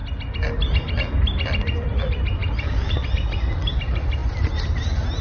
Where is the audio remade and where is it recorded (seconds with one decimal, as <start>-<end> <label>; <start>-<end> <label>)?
0.0-5.2 recorded